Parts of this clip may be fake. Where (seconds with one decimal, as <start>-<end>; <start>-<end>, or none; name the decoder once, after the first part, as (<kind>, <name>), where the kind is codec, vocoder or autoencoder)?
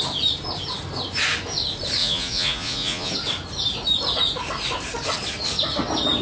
2.0-3.1 (vocoder, Vocos)